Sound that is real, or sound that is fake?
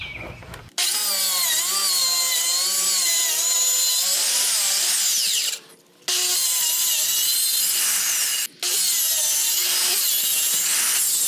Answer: real